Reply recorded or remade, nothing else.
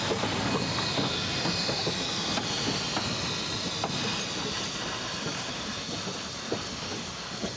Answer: recorded